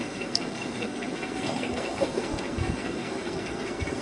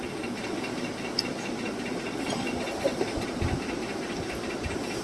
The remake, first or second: first